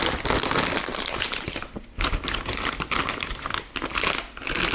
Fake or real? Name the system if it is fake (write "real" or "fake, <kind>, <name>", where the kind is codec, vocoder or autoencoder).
real